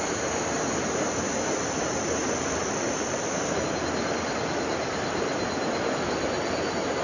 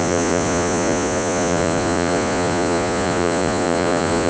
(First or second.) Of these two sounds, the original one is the first